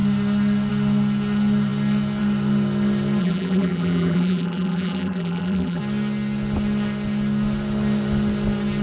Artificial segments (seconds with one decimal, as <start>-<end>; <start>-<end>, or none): 3.2-5.8